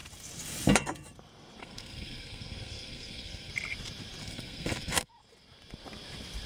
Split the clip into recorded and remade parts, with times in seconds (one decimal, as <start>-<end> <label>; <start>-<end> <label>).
0.0-1.6 recorded; 1.6-3.5 remade; 3.5-4.2 recorded; 4.2-5.1 remade; 5.1-6.5 recorded